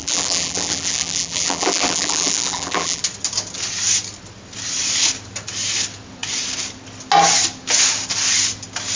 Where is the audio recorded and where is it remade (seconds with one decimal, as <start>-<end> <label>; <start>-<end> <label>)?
0.0-3.0 remade; 3.0-9.0 recorded